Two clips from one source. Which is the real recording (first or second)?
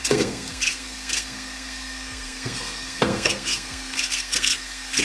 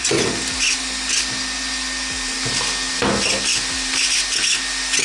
second